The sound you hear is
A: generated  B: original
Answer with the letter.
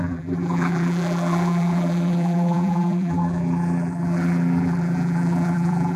A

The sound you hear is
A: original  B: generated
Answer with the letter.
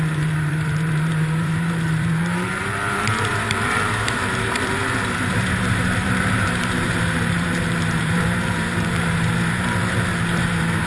B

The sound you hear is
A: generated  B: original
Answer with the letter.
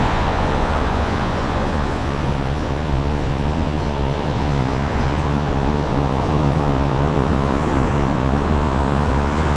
A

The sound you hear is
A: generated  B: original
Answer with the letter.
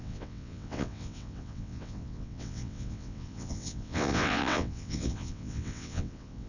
A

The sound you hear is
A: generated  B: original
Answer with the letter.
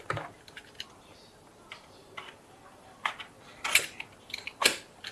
A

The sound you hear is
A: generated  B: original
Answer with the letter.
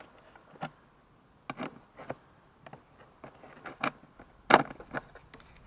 B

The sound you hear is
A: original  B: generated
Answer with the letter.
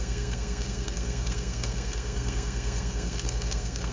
B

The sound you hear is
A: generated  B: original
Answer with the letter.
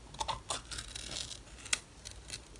B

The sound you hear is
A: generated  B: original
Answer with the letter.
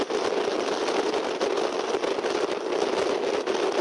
B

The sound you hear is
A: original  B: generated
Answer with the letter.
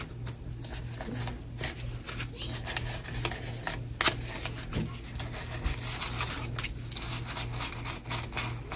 A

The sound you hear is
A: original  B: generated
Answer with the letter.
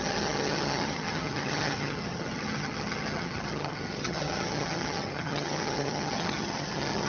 B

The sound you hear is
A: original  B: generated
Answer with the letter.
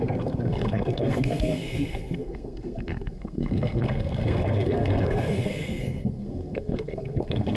B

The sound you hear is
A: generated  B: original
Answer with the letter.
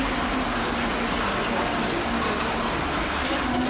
B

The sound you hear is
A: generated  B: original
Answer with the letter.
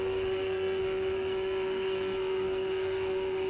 A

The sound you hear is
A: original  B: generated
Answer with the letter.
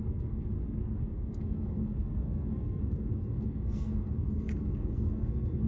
B